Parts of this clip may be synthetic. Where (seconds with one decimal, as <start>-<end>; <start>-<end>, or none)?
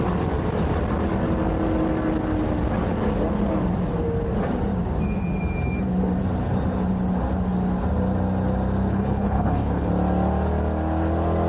8.9-9.9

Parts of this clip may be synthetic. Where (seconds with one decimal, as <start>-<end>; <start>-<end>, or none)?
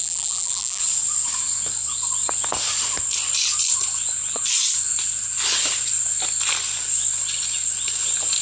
0.0-0.8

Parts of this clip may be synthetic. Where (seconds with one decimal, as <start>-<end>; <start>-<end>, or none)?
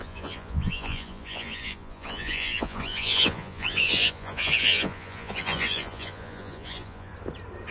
0.0-7.1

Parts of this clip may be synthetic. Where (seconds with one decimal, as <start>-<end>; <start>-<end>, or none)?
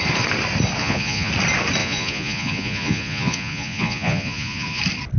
0.8-1.3; 1.8-4.8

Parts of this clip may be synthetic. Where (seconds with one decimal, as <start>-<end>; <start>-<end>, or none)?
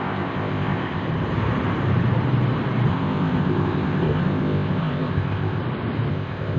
0.0-1.1; 2.9-5.6; 6.1-6.6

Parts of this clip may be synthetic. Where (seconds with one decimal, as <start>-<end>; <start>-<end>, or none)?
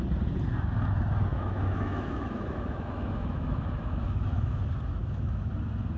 1.3-4.6; 5.0-5.5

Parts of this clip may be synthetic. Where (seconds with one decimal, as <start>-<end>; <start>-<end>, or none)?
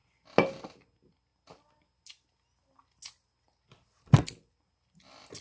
none